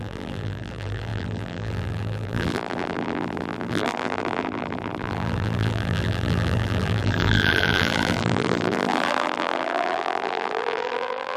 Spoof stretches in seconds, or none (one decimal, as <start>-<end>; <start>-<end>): 0.0-11.4